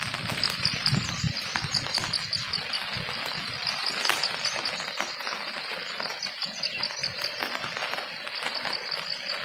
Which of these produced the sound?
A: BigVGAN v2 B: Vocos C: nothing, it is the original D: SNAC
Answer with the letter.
C